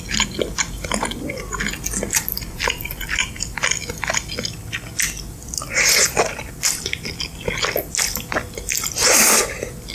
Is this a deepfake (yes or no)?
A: no